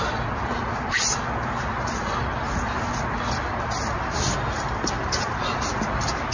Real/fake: real